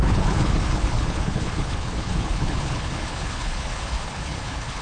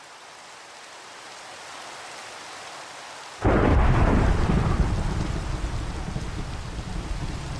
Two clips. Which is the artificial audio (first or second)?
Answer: first